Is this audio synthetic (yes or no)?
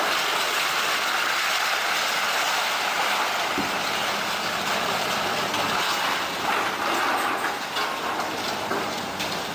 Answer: no